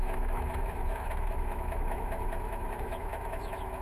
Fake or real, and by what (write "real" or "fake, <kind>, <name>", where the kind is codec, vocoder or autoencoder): fake, autoencoder, DAC-VAE